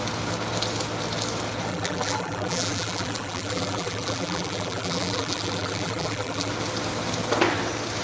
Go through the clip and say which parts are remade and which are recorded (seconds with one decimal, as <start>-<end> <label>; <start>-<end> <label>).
0.0-1.7 recorded; 1.7-6.5 remade; 6.5-8.0 recorded